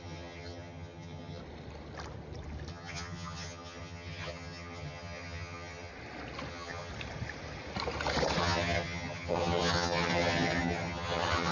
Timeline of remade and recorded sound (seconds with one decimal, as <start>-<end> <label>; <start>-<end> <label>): 0.0-1.4 remade; 1.4-2.7 recorded; 2.7-5.9 remade; 5.9-6.5 recorded; 6.5-6.9 remade; 6.9-8.4 recorded; 8.4-11.5 remade